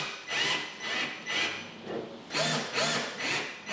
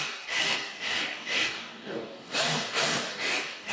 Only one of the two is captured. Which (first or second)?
first